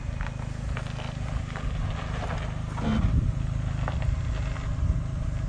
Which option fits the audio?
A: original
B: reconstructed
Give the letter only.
A